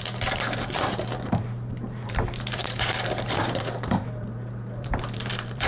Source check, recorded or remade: remade